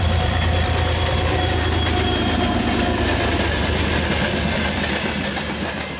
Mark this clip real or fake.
fake